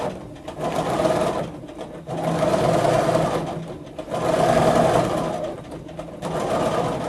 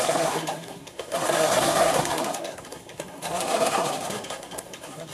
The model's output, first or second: second